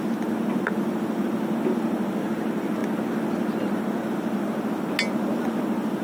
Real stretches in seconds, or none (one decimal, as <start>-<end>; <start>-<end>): 0.0-6.0